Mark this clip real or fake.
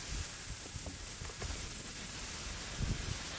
real